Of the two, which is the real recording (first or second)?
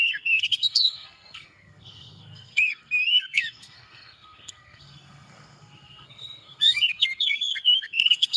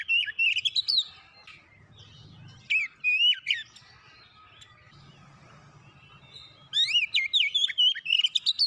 second